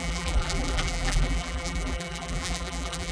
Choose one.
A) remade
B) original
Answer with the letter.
A